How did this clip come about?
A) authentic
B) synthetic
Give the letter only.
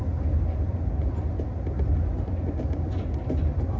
A